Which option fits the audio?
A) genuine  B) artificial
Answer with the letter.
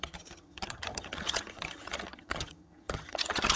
B